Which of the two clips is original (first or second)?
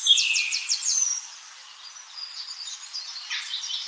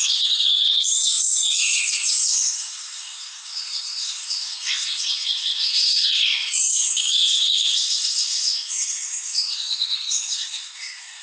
first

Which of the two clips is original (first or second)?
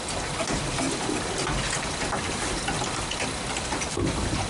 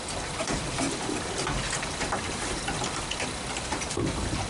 first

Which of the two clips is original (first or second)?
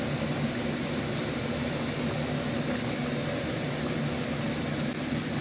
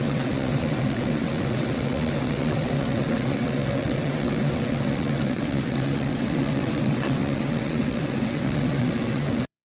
first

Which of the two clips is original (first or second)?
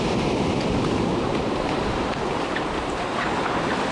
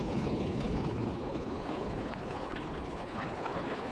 first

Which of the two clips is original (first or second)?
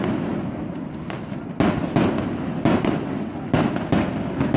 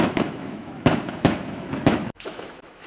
first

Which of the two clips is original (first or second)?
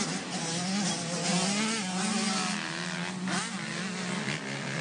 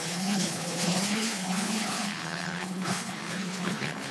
first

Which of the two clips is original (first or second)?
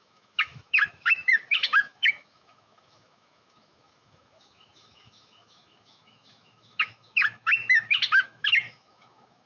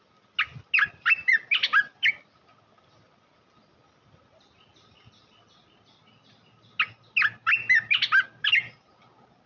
second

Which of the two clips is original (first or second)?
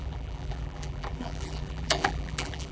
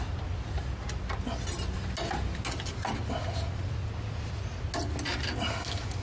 second